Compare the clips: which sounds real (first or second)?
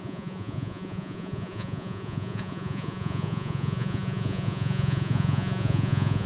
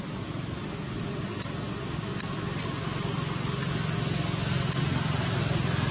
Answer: second